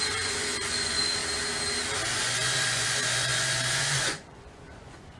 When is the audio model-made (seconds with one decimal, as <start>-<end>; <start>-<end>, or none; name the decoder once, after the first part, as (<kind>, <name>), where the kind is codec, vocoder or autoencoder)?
0.0-1.2 (vocoder, Vocos); 2.1-5.2